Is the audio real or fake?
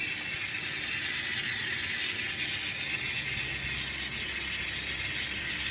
real